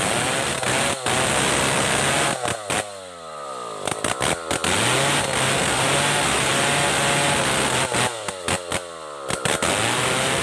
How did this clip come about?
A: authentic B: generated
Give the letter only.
A